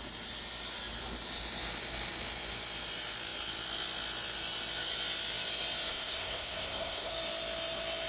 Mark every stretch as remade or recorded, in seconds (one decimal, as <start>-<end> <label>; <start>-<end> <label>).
0.0-5.9 recorded; 5.9-7.1 remade; 7.1-8.1 recorded